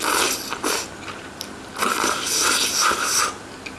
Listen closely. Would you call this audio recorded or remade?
recorded